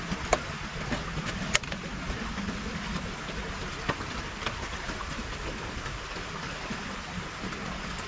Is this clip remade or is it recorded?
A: recorded